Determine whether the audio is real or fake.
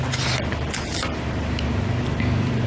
real